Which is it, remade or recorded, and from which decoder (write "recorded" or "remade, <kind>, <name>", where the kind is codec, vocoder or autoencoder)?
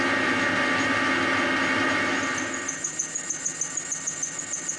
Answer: recorded